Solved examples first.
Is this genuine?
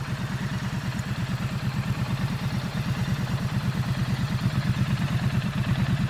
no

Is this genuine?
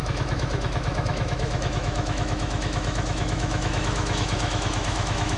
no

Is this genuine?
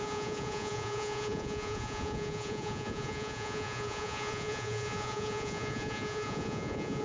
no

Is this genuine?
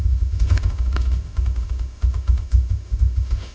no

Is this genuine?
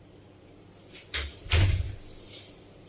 yes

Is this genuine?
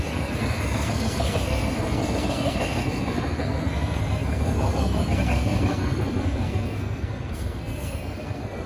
no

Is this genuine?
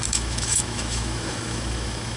no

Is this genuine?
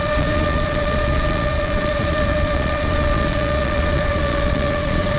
no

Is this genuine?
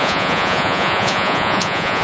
no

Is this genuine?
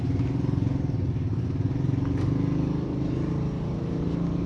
yes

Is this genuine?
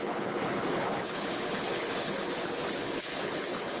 no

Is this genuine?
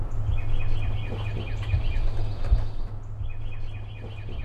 yes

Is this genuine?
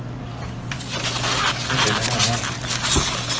yes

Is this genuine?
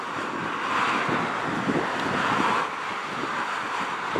yes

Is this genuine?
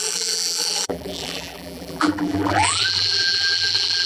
no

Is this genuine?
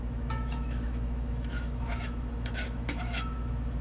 no